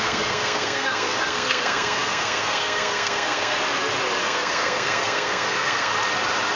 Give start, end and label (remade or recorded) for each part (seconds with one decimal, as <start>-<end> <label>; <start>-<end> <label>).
0.0-3.6 remade; 3.6-4.2 recorded; 4.2-5.9 remade; 5.9-6.6 recorded